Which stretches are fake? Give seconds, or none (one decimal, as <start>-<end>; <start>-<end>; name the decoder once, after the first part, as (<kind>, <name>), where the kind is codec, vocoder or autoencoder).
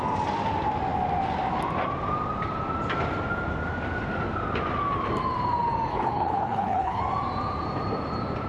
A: 5.9-7.0 (codec, HILCodec)